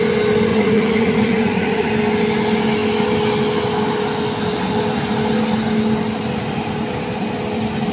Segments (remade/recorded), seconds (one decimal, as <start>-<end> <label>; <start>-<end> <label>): 0.0-0.5 recorded; 0.5-1.9 remade; 1.9-7.9 recorded